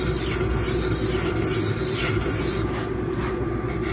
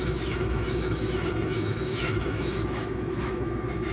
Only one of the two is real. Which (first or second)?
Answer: first